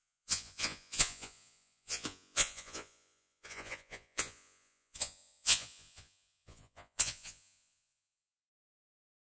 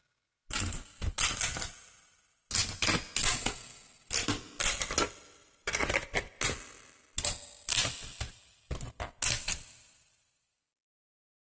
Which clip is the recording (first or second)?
second